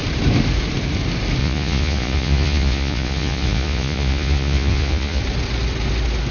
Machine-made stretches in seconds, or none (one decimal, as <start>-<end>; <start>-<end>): 1.4-5.2